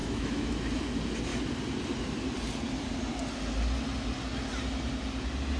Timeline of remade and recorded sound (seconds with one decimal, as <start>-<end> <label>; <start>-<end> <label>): 0.0-0.6 remade; 0.6-5.6 recorded